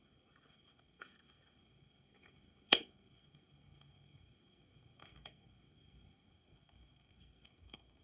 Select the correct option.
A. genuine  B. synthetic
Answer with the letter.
B